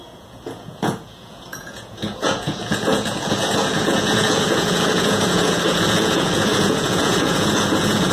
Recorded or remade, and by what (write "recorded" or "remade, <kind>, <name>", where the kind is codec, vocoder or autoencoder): remade, vocoder, Vocos